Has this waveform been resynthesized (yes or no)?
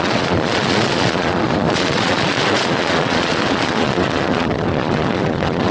yes